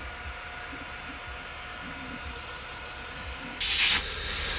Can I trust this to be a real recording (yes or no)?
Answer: yes